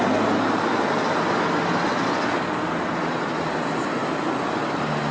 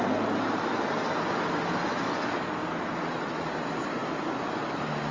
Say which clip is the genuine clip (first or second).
first